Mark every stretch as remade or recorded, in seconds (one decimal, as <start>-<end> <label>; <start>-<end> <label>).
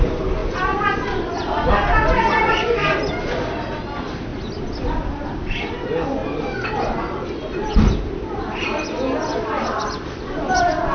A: 0.0-10.9 recorded